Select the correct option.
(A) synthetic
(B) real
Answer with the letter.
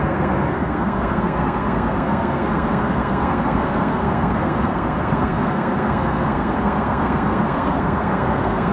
A